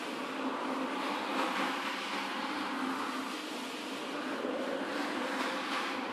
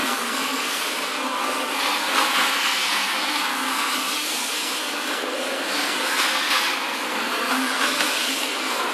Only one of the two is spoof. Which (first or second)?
second